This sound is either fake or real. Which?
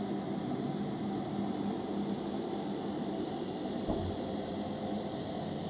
real